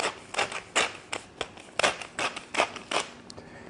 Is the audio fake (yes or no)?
no